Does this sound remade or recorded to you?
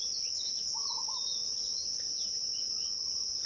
recorded